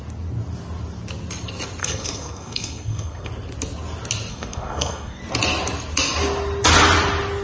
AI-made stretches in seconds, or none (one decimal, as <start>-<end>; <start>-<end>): 1.8-3.3; 4.3-5.2